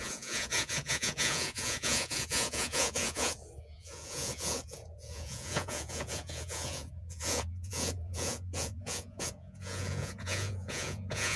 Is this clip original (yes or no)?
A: no